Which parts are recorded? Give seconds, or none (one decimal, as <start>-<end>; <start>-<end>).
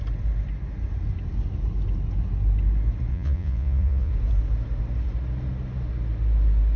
0.0-3.1; 4.1-6.8